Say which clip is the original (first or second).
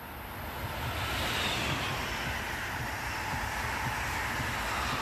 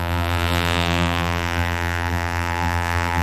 first